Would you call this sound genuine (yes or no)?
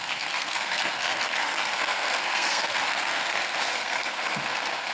no